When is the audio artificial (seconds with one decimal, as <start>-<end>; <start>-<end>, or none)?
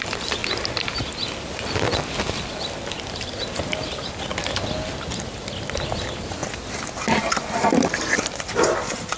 0.0-0.4; 3.1-4.3; 5.9-6.4; 8.4-9.2